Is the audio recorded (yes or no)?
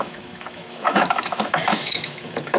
no